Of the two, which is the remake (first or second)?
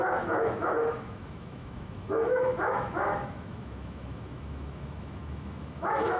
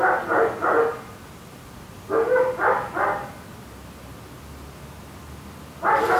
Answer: first